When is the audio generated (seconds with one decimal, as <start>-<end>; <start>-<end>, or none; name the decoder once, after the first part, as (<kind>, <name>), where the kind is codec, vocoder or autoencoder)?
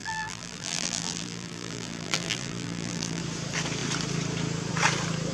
0.0-3.2 (vocoder, BigVGAN v2)